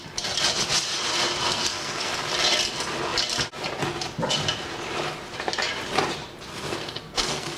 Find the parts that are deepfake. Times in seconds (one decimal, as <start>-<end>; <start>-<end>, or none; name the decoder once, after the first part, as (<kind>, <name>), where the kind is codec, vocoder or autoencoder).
1.5-2.1 (codec, SNAC); 6.5-7.6